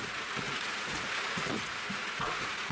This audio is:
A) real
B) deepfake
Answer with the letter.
B